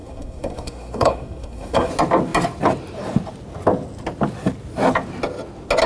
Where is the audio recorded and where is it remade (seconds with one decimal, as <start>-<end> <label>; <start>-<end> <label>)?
0.0-1.9 remade; 1.9-5.9 recorded